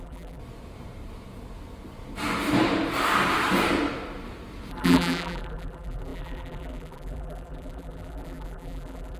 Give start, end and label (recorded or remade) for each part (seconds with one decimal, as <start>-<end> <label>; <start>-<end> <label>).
0.0-0.4 remade; 0.4-4.7 recorded; 4.7-9.2 remade